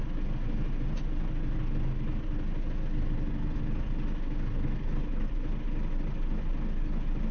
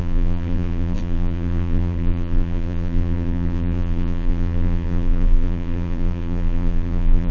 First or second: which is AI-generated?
second